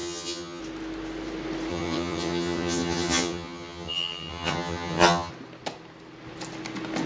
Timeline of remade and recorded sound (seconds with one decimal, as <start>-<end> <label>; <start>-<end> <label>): 0.0-0.6 remade; 0.6-1.7 recorded; 1.7-5.3 remade; 5.3-7.1 recorded